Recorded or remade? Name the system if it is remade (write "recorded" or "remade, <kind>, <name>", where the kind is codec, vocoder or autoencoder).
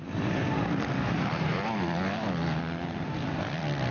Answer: recorded